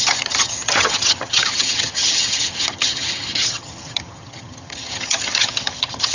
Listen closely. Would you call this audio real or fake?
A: fake